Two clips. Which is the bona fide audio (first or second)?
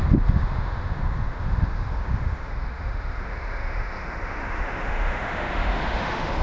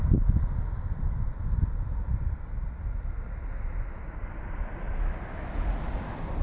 second